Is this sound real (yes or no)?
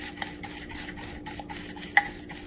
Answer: yes